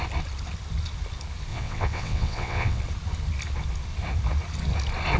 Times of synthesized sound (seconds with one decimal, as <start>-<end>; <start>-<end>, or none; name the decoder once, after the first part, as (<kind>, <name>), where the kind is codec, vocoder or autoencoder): 1.5-2.8 (vocoder, WaveNeXt)